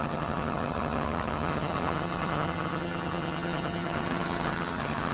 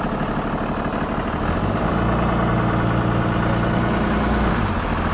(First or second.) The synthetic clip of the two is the first